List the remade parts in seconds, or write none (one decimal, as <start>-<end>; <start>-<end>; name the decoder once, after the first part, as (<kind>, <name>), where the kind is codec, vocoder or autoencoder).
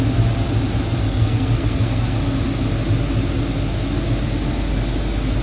1.0-2.2 (codec, SNAC)